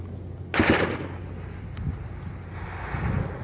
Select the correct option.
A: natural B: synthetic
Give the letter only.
A